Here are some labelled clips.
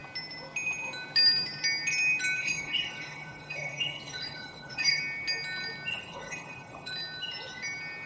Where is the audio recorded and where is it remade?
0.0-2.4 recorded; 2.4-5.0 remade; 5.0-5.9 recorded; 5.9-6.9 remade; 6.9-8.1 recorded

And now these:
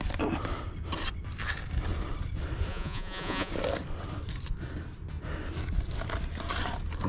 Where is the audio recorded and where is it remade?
0.0-2.7 recorded; 2.7-3.5 remade; 3.5-7.1 recorded

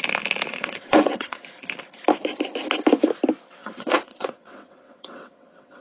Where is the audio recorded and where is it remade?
0.0-0.5 recorded; 0.5-1.4 remade; 1.4-3.6 recorded; 3.6-5.8 remade